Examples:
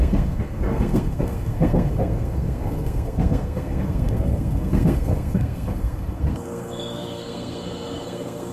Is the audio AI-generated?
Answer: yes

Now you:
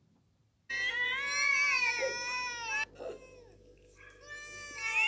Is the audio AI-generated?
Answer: no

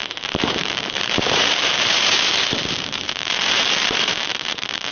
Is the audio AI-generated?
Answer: yes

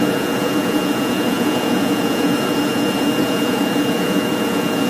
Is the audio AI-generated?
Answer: yes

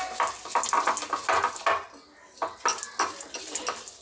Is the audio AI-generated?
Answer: no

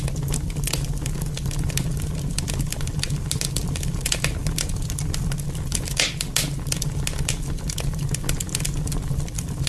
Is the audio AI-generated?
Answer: no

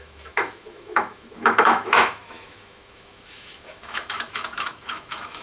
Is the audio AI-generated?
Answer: yes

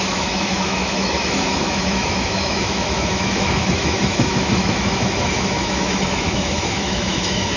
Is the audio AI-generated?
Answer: yes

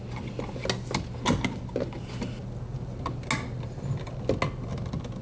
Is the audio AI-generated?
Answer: no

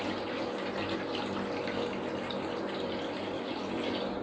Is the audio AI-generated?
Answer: no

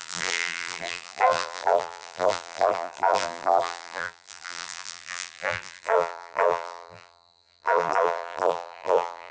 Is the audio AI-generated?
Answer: yes